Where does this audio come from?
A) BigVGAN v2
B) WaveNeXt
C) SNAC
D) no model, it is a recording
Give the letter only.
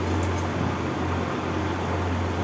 D